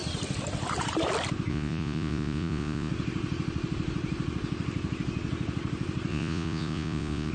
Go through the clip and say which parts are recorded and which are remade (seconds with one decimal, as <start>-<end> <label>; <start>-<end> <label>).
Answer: 0.0-1.5 recorded; 1.5-2.9 remade; 2.9-6.1 recorded; 6.1-7.3 remade